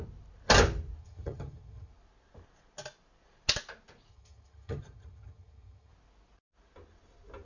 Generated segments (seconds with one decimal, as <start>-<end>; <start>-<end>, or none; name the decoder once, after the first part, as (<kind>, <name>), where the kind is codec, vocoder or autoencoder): 1.0-1.9 (vocoder, HiFi-GAN); 4.1-5.9

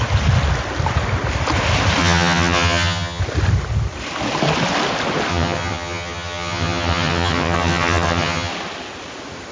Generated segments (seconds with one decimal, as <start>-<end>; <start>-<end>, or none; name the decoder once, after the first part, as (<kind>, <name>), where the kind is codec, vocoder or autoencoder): 2.0-3.2 (vocoder, HiFi-GAN); 5.3-8.5

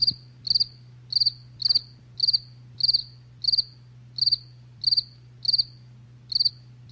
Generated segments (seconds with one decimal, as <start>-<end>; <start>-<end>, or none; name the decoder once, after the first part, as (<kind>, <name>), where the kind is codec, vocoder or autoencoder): none

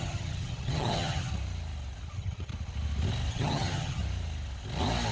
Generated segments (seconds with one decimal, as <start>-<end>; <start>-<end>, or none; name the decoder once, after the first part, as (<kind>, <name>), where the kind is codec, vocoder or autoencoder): 0.0-1.3 (vocoder, HiFi-GAN); 2.1-2.5; 3.3-4.0

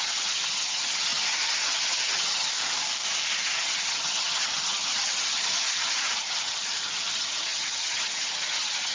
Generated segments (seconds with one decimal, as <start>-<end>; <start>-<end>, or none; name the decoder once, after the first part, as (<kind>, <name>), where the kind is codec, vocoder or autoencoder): 0.0-2.5 (vocoder, HiFi-GAN); 3.4-8.9

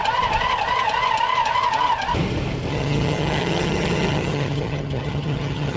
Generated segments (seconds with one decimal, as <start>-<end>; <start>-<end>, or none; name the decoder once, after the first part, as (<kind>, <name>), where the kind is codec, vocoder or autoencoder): 2.7-5.8 (vocoder, HiFi-GAN)

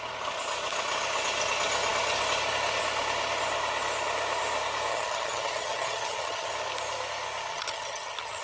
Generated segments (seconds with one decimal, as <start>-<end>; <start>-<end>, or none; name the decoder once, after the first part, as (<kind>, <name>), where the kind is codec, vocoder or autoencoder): 4.9-6.5 (vocoder, HiFi-GAN); 7.5-8.4

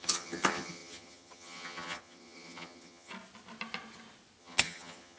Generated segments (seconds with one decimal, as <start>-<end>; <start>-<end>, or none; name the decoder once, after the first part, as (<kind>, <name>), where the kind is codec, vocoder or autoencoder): 0.0-3.1 (vocoder, HiFi-GAN); 4.4-5.2